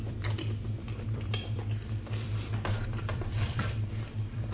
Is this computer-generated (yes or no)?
yes